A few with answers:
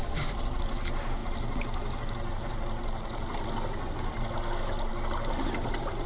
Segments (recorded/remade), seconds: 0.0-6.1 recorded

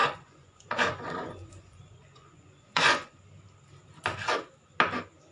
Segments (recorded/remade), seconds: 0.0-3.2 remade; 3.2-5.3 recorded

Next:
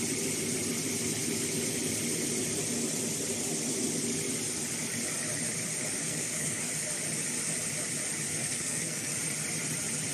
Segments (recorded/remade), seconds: 0.0-6.0 recorded; 6.0-6.7 remade; 6.7-8.4 recorded; 8.4-9.1 remade; 9.1-10.1 recorded